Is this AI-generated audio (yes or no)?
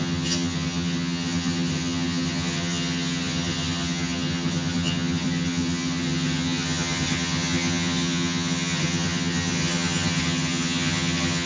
yes